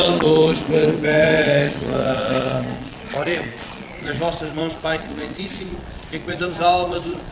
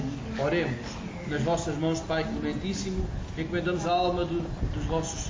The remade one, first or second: first